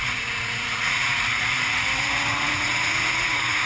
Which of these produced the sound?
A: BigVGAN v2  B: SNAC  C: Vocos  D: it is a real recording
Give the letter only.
C